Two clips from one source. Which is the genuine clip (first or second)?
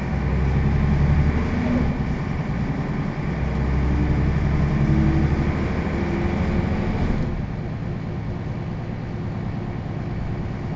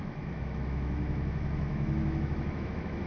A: first